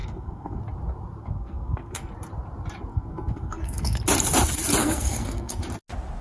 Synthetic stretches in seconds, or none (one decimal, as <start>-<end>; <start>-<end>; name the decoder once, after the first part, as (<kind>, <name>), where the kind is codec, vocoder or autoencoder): 0.0-0.6 (codec, SNAC); 1.2-2.1; 2.9-4.0; 4.8-5.6